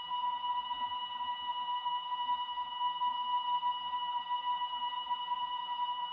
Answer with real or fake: fake